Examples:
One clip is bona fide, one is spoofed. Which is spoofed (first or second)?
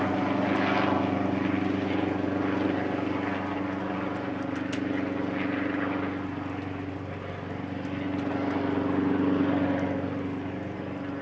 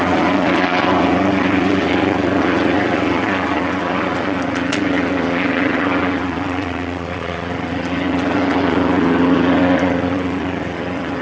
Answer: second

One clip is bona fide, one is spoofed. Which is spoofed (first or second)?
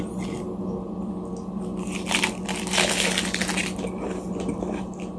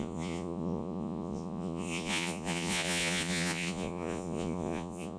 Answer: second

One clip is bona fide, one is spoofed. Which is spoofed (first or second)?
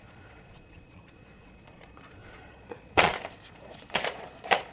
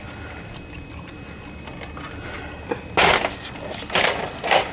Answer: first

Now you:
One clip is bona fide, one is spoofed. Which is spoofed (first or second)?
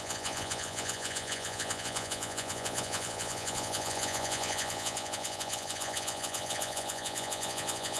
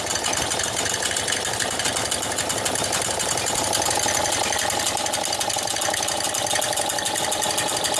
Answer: first